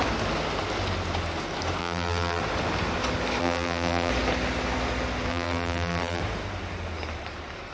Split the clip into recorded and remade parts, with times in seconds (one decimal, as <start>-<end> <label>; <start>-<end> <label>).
0.0-1.8 recorded; 1.8-2.4 remade; 2.4-3.4 recorded; 3.4-4.1 remade; 4.1-5.3 recorded; 5.3-6.2 remade; 6.2-7.7 recorded